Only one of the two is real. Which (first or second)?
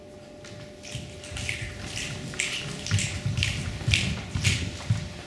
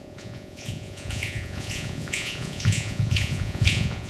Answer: first